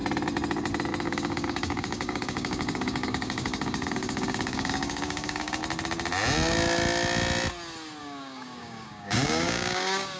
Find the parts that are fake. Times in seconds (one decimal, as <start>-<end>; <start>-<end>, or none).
1.0-5.6; 8.0-10.2